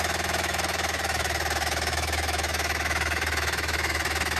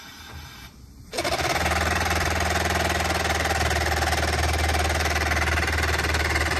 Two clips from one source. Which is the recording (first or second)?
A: second